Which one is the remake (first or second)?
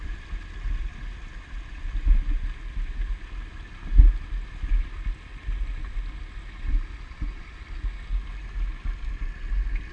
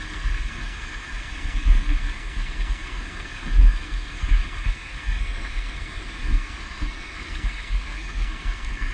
second